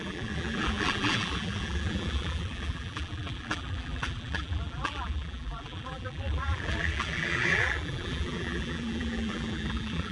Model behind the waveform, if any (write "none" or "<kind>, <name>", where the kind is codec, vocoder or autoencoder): vocoder, BigVGAN v2